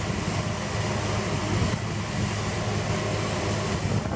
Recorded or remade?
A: recorded